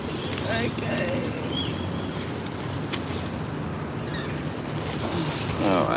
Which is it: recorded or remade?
recorded